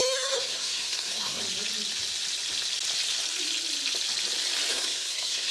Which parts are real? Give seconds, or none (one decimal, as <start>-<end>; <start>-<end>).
1.4-4.7